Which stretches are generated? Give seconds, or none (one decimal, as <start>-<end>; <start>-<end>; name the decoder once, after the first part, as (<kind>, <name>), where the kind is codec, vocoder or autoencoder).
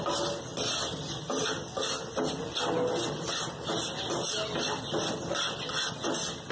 none